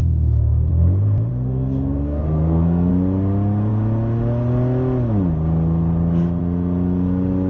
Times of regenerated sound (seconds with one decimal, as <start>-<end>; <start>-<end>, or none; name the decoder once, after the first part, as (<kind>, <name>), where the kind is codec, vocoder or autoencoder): 0.0-0.7 (codec, SNAC); 1.3-2.9

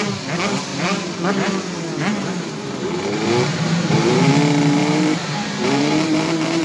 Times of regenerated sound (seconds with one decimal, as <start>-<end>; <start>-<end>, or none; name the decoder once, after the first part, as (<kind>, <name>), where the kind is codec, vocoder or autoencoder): 0.7-1.5 (vocoder, BigVGAN v2); 2.1-2.7; 3.5-4.3; 4.8-6.6

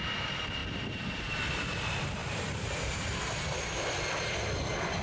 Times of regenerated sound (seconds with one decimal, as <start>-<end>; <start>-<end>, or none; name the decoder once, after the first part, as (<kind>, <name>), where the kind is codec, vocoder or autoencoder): 2.2-4.1 (vocoder, BigVGAN v2)